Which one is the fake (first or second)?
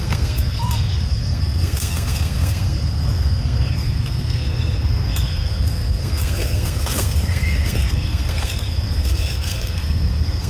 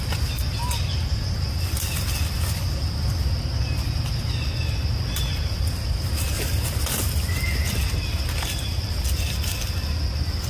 first